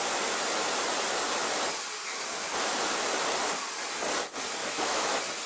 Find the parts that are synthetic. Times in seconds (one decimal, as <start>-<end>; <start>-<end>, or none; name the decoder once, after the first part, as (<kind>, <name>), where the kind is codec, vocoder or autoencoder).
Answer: 4.6-5.1 (autoencoder, DAC-VAE)